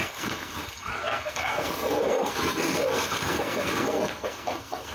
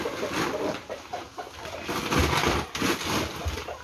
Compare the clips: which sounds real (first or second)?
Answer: second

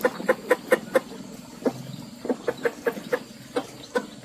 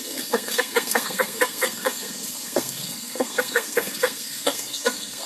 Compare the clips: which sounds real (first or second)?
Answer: first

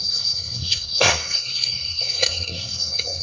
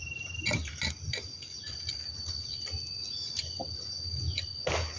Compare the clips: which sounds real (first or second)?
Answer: second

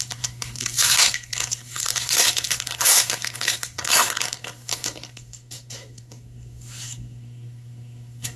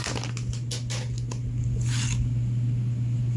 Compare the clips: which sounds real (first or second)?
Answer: second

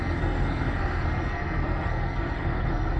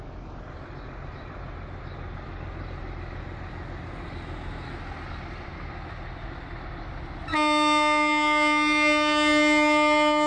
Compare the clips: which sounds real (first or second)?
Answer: second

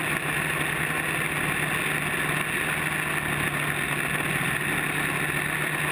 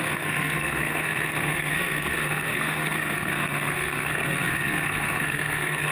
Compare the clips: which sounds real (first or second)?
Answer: first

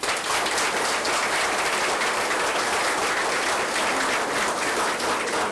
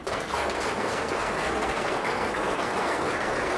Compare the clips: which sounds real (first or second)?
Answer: first